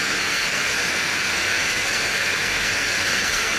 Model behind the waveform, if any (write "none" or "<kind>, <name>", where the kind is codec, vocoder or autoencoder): codec, SNAC